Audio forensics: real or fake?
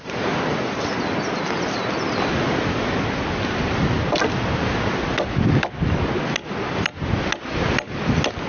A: real